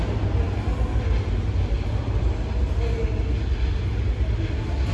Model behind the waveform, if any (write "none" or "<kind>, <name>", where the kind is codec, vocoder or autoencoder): none